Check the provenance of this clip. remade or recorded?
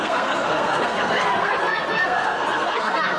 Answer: remade